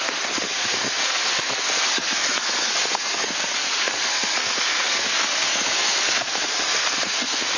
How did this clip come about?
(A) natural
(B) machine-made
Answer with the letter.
B